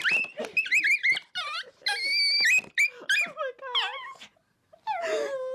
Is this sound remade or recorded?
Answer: recorded